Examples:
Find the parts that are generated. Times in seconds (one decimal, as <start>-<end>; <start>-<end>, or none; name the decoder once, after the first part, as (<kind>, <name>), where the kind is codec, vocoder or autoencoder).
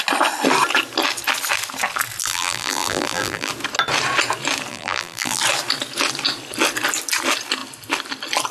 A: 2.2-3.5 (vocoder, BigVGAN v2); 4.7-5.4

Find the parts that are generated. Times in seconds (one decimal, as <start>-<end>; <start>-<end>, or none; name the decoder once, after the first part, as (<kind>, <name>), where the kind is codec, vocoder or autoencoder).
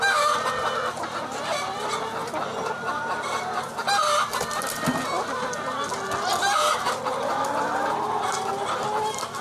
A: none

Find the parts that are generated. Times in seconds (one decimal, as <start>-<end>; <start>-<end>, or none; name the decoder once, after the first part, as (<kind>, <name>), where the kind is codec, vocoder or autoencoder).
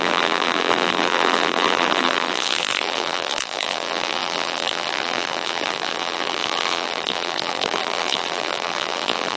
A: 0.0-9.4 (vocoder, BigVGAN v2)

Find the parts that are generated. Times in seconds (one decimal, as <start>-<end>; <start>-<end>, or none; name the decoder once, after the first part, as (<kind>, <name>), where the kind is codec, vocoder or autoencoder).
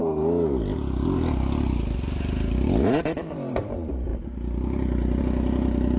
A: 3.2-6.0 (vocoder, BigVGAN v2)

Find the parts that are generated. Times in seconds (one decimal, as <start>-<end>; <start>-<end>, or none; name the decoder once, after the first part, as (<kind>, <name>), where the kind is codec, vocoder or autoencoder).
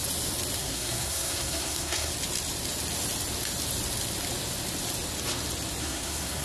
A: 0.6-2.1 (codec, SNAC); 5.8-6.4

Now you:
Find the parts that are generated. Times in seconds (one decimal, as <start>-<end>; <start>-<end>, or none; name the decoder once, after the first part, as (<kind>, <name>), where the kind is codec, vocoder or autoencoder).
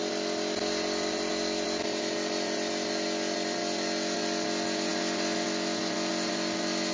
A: none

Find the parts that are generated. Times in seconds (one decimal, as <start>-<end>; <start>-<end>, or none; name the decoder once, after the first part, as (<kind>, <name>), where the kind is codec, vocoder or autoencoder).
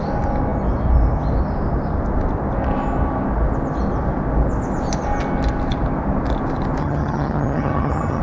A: 6.8-8.2 (vocoder, HiFi-GAN)